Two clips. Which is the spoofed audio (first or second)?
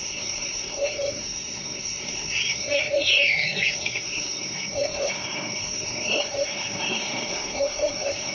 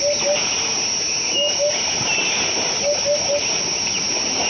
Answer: first